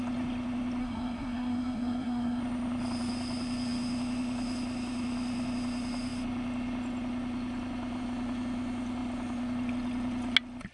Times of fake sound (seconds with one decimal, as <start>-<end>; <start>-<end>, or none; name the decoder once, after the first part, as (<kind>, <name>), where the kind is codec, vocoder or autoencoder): 0.8-2.4 (codec, SNAC)